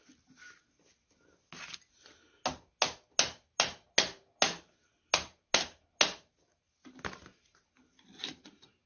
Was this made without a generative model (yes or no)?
yes